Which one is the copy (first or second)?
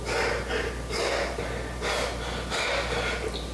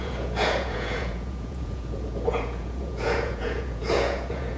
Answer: second